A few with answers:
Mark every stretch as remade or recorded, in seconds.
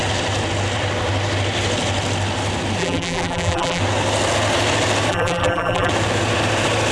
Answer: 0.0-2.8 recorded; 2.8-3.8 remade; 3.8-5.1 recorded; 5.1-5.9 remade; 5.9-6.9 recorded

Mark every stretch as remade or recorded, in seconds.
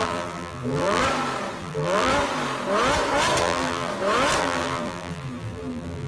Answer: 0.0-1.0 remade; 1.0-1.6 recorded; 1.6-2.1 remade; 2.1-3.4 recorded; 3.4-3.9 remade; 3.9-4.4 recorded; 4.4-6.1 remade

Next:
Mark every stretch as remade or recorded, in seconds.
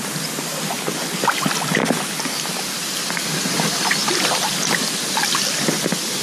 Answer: 0.0-6.2 recorded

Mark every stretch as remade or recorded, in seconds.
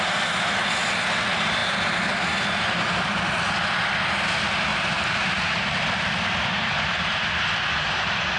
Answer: 0.0-4.7 recorded; 4.7-7.3 remade; 7.3-8.4 recorded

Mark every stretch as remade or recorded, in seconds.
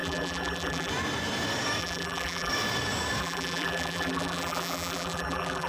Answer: 0.0-0.9 remade; 0.9-1.8 recorded; 1.8-2.5 remade; 2.5-3.2 recorded; 3.2-5.7 remade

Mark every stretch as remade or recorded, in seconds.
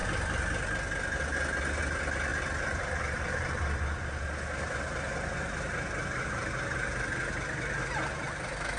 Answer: 0.0-8.8 recorded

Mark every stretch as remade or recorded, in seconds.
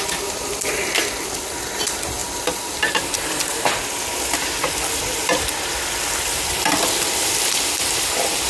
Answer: 0.0-8.5 remade